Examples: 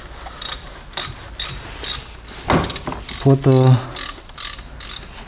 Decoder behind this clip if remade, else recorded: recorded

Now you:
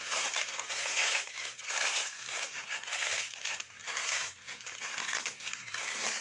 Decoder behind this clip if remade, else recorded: remade, codec, SNAC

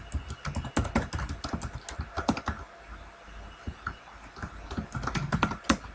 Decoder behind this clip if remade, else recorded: recorded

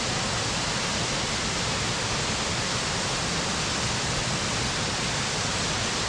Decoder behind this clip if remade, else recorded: recorded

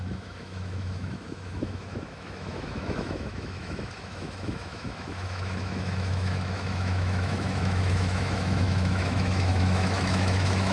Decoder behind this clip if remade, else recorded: remade, autoencoder, DAC-VAE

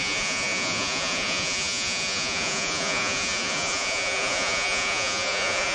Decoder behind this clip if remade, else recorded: remade, vocoder, Vocos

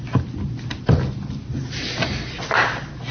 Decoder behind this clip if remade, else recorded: recorded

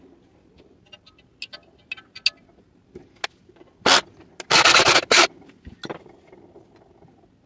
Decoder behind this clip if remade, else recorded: recorded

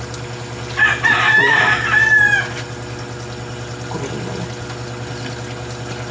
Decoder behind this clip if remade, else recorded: recorded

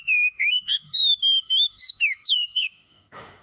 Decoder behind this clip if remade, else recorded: remade, autoencoder, DAC-VAE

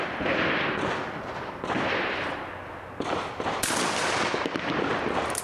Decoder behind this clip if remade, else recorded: recorded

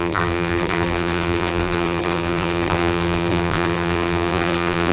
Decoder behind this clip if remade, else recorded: remade, vocoder, BigVGAN v2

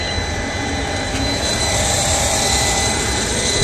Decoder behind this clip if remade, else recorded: remade, vocoder, BigVGAN v2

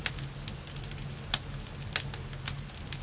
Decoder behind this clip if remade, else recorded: recorded